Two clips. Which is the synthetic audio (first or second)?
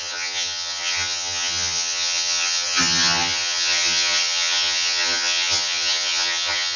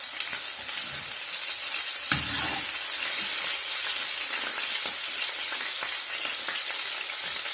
first